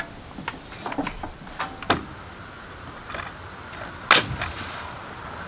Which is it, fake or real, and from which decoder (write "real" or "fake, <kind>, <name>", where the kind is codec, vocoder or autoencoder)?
real